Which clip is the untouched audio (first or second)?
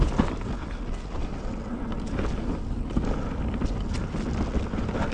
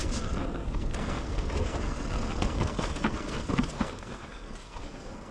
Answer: first